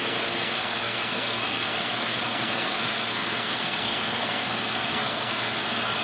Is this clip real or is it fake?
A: fake